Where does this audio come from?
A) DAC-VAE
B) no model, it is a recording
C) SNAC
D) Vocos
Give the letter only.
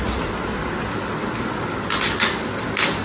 B